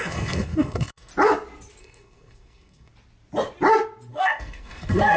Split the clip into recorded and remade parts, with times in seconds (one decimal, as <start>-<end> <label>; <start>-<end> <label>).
0.0-1.1 remade; 1.1-1.8 recorded; 1.8-2.9 remade; 2.9-4.1 recorded; 4.1-5.2 remade